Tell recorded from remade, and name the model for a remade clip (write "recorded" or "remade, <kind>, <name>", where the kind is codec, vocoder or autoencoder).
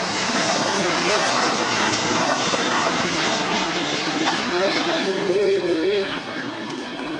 remade, codec, SNAC